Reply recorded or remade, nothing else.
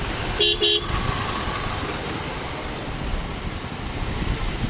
recorded